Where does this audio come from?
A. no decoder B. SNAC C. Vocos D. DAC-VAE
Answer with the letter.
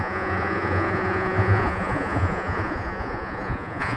C